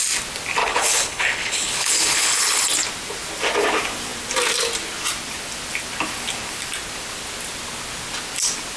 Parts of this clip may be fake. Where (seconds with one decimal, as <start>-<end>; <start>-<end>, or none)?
0.6-2.6